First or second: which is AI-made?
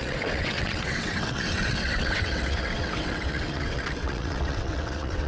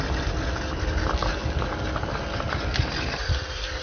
first